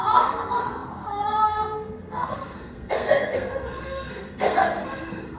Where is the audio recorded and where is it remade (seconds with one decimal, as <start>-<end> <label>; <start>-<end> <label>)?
0.0-5.4 remade